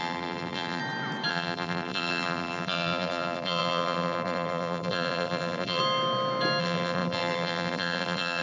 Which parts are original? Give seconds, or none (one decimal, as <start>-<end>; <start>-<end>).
0.8-1.3; 5.8-6.6